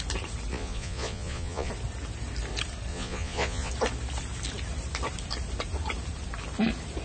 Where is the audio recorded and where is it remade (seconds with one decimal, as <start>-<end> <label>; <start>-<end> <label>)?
0.0-0.5 recorded; 0.5-1.7 remade; 1.7-2.9 recorded; 2.9-3.7 remade; 3.7-7.0 recorded